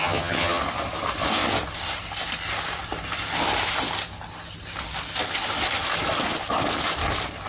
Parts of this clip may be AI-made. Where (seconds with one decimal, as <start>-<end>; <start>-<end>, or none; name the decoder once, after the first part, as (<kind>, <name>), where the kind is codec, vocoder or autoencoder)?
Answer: 0.0-0.6 (vocoder, HiFi-GAN)